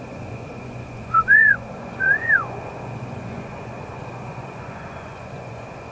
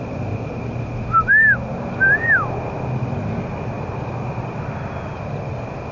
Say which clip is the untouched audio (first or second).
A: second